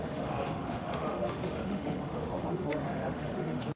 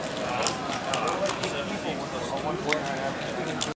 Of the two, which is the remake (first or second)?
first